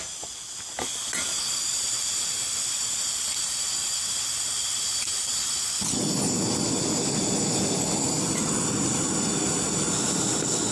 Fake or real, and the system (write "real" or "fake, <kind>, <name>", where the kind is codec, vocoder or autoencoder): real